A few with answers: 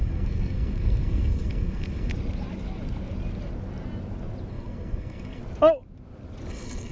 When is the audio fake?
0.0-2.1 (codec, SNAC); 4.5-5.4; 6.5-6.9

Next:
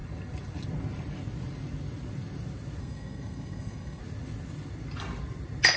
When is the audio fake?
2.8-4.0 (codec, SNAC)

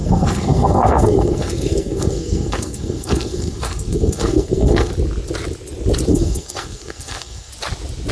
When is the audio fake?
0.0-4.9 (codec, SNAC); 6.1-7.5

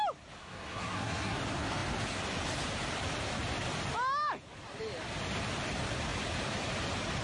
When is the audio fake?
0.4-1.4 (codec, SNAC)

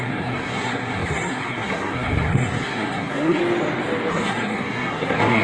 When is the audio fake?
0.0-3.4 (codec, SNAC); 4.1-5.4

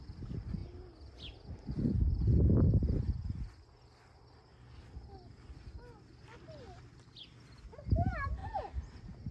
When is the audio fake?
none